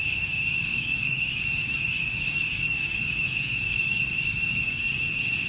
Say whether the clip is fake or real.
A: fake